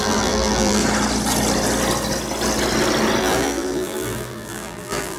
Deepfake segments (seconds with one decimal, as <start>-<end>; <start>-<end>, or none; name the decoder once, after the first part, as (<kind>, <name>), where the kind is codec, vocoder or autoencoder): 0.0-0.8 (vocoder, BigVGAN v2); 3.2-5.2